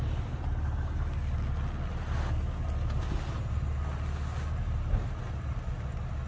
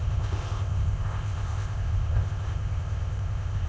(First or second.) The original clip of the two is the first